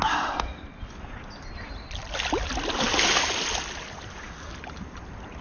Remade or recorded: recorded